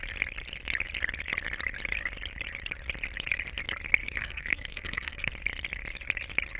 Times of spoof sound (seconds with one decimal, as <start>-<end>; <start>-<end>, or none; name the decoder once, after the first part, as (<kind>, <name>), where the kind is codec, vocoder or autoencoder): 4.0-5.3 (codec, SNAC)